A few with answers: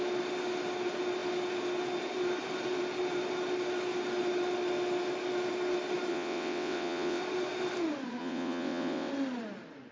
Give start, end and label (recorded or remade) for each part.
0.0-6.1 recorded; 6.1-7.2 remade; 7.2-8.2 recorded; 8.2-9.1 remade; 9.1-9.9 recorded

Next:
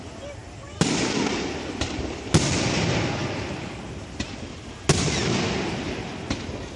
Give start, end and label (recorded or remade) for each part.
0.0-0.4 recorded; 0.4-1.9 remade; 1.9-6.8 recorded

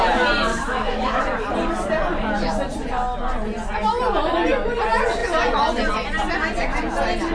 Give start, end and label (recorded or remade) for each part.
0.0-0.5 recorded; 0.5-1.2 remade; 1.2-7.3 recorded

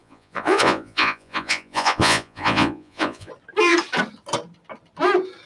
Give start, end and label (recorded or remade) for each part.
0.0-3.3 remade; 3.3-5.5 recorded

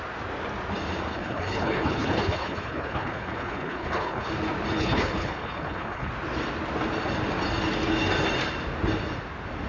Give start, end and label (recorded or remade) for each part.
0.0-1.1 recorded; 1.1-4.3 remade; 4.3-4.8 recorded; 4.8-6.1 remade; 6.1-9.7 recorded

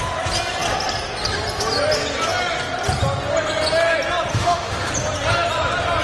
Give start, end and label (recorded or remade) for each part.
0.0-4.3 recorded; 4.3-4.9 remade; 4.9-6.0 recorded

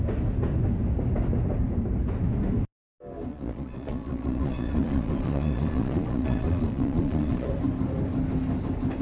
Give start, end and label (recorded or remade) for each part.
0.0-3.3 recorded; 3.3-7.5 remade; 7.5-9.0 recorded